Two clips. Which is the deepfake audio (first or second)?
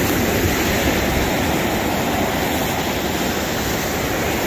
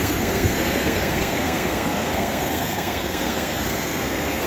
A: second